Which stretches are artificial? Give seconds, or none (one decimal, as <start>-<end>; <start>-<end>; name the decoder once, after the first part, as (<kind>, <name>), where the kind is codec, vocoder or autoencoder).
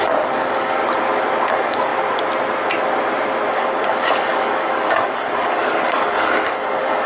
0.0-0.8 (codec, DAC); 1.5-1.9; 3.5-7.1